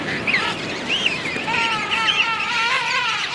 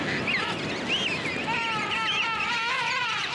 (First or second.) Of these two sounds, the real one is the second